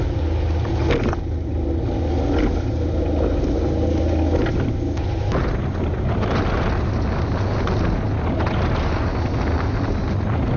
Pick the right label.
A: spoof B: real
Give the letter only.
B